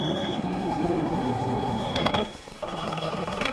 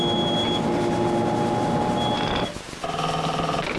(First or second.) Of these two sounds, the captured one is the second